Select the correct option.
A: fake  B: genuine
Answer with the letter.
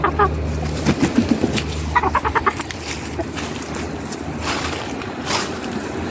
B